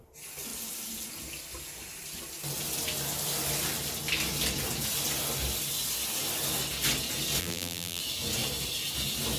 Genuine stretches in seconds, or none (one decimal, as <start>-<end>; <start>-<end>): 0.0-7.4; 8.0-9.4